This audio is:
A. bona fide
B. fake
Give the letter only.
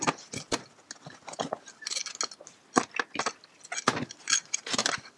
A